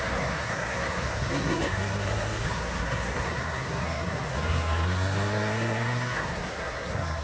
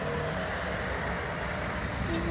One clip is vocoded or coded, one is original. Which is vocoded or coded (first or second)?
first